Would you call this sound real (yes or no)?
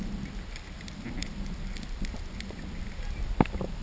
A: yes